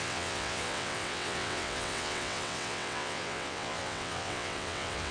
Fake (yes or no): yes